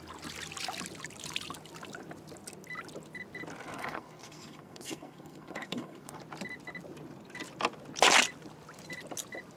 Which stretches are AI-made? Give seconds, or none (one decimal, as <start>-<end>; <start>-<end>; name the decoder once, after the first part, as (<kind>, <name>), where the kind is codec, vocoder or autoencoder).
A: 3.7-6.2 (codec, SNAC)